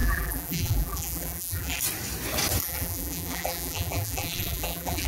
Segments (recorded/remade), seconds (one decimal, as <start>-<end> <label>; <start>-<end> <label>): 0.0-1.8 remade; 1.8-2.6 recorded; 2.6-5.1 remade